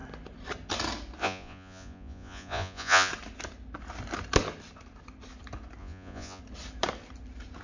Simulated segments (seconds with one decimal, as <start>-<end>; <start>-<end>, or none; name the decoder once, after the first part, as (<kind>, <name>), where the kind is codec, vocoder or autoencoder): 1.2-3.1 (vocoder, Vocos); 5.8-6.4